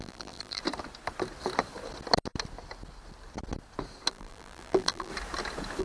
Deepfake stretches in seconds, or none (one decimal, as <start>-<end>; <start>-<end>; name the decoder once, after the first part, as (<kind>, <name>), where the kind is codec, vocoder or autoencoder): 0.0-0.6 (vocoder, BigVGAN v2); 4.1-5.1